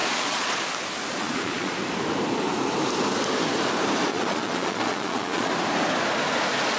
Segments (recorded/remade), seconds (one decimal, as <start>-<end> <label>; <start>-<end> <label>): 0.0-0.6 remade; 0.6-1.1 recorded; 1.1-1.7 remade; 1.7-4.1 recorded; 4.1-5.5 remade; 5.5-6.8 recorded